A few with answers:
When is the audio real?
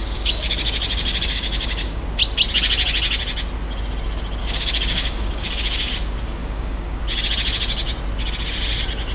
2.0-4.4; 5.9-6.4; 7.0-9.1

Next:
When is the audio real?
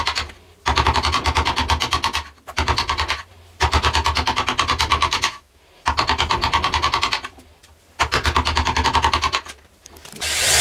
0.0-4.9; 5.6-10.6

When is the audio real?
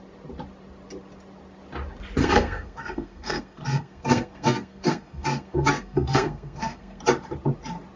0.0-2.2; 7.0-8.0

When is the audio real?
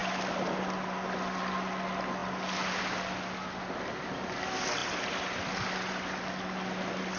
0.0-7.2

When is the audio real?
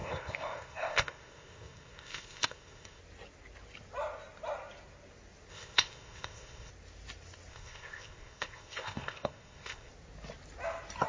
3.0-5.5; 6.7-7.5; 9.9-11.1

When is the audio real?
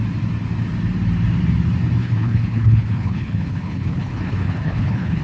0.0-2.0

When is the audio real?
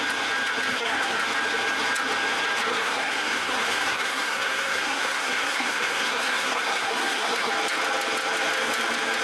0.0-0.7; 1.2-2.7; 7.5-9.2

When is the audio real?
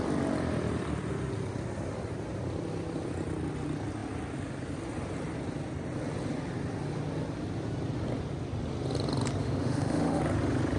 0.0-9.4; 10.2-10.8